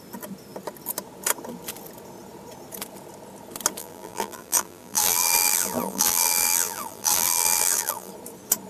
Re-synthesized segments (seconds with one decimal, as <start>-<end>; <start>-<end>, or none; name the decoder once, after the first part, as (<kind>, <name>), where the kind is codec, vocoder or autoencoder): 3.8-8.1 (vocoder, BigVGAN v2)